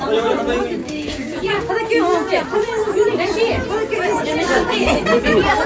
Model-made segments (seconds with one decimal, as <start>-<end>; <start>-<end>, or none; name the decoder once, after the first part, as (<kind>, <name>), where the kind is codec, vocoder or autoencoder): 0.8-1.7 (codec, DAC)